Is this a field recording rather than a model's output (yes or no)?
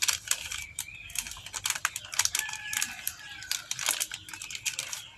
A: no